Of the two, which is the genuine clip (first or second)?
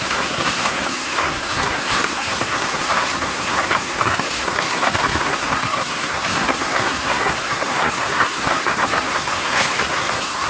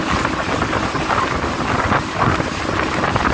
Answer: second